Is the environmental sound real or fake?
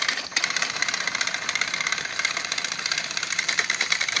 fake